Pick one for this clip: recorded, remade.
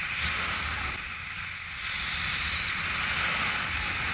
recorded